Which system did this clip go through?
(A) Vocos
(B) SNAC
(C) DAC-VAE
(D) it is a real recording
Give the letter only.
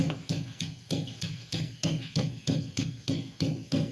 B